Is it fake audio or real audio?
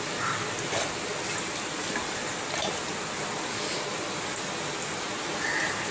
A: real